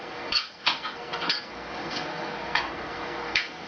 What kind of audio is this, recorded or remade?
remade